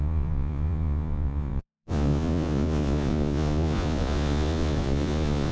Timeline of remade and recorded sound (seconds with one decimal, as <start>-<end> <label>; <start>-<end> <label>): 0.0-5.5 remade